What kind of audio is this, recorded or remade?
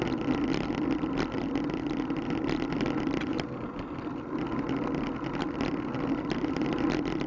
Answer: recorded